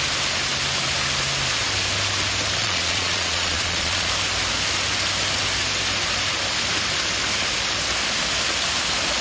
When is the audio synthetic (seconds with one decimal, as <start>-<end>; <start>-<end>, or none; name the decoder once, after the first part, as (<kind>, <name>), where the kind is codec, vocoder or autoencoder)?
2.6-4.1 (vocoder, Vocos)